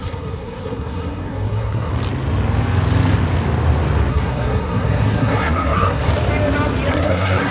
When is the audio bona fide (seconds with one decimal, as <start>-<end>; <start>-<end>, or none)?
1.9-4.1; 6.1-6.9